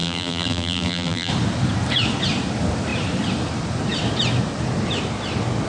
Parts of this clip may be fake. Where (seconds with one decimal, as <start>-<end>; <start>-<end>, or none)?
0.0-1.3